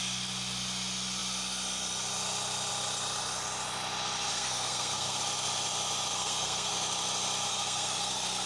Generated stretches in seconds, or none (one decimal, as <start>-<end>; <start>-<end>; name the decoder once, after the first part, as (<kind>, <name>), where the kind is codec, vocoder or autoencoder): 4.3-5.2 (codec, SNAC); 6.1-6.7; 7.5-8.5